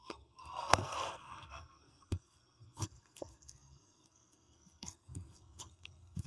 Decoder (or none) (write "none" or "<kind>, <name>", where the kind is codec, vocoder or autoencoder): codec, SNAC